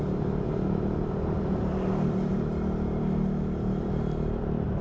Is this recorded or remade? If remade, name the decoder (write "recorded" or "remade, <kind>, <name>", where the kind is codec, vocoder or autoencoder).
recorded